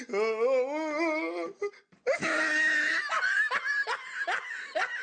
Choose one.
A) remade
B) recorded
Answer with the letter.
B